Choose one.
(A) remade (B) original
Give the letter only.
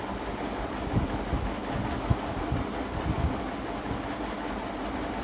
B